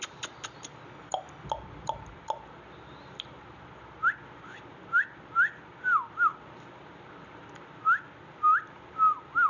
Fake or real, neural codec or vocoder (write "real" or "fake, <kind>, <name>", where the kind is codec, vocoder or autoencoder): real